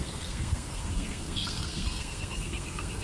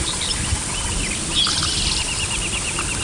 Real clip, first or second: second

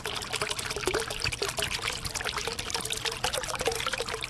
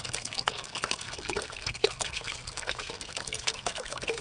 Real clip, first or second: first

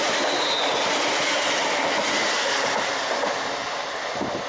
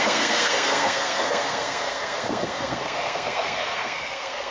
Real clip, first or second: first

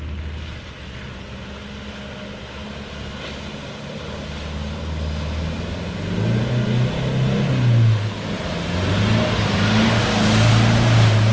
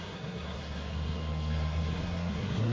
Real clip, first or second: first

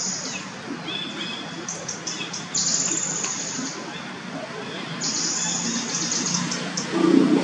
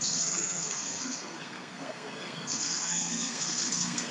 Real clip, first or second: first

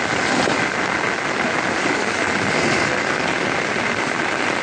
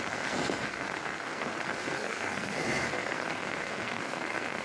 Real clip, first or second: first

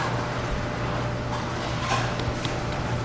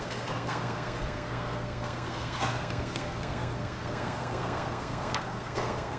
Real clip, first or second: first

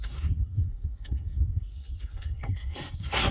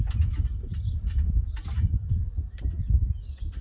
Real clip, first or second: second